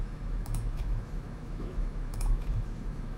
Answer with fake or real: fake